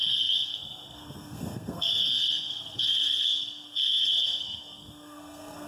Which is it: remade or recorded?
remade